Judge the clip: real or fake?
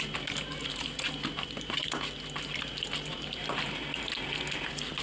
real